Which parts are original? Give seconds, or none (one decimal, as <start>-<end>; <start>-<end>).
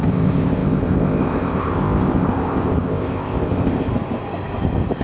3.9-5.0